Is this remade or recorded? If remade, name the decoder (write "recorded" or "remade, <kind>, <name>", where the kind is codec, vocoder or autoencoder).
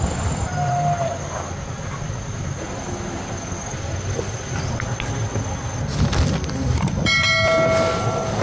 recorded